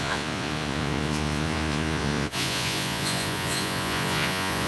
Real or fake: fake